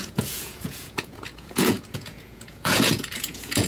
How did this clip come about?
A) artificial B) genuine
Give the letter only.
A